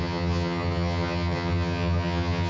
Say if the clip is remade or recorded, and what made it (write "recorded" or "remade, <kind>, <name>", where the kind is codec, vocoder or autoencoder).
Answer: remade, vocoder, HiFi-GAN